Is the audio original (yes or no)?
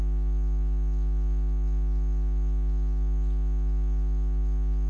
yes